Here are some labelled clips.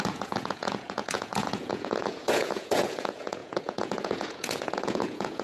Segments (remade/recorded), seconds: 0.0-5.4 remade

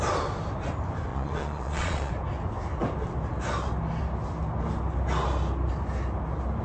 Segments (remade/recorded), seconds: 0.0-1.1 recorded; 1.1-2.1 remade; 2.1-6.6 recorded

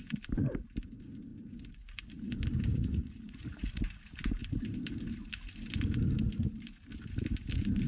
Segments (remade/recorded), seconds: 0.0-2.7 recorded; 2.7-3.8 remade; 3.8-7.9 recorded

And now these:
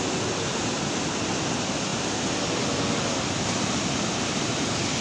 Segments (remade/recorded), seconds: 0.0-5.0 recorded

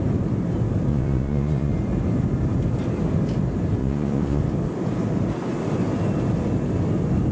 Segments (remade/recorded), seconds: 0.0-0.9 recorded; 0.9-1.7 remade; 1.7-3.8 recorded; 3.8-4.4 remade; 4.4-7.3 recorded